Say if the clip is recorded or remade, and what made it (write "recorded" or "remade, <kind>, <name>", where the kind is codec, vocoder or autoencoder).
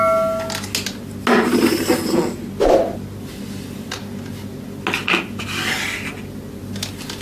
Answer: recorded